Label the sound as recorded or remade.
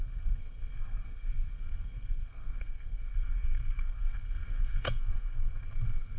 remade